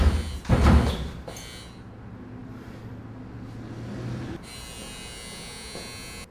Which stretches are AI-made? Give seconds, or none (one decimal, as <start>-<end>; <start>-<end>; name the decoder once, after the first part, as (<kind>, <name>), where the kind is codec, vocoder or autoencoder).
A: none

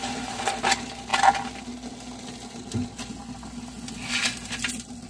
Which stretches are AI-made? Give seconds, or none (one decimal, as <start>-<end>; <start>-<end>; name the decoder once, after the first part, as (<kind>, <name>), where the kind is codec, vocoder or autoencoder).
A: none

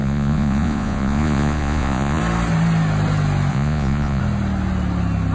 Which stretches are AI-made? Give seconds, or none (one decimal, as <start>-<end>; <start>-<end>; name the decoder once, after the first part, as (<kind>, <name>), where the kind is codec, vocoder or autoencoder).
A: 0.0-2.2 (vocoder, Vocos); 3.5-4.2

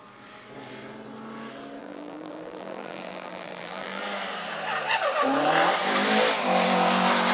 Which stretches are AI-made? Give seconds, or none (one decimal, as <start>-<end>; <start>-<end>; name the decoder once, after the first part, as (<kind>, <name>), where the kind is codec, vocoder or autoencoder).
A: 1.8-4.0 (vocoder, BigVGAN v2)

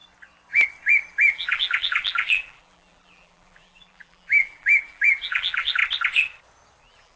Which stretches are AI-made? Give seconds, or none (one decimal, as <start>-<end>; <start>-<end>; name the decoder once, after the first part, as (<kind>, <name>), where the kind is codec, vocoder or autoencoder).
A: 1.1-5.8 (vocoder, BigVGAN v2); 6.8-7.2

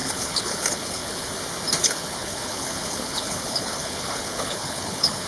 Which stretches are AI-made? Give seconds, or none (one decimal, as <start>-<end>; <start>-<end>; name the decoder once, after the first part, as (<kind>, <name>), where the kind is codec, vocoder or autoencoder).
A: 0.0-1.4 (codec, HILCodec); 1.8-5.3

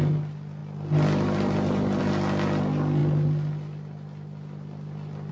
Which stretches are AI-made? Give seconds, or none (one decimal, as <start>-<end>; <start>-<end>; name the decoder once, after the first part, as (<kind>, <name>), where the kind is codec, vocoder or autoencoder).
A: none

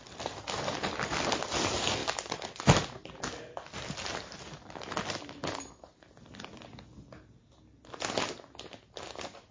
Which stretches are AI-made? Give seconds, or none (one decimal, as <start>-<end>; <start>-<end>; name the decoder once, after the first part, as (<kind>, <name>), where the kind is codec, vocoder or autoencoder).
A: none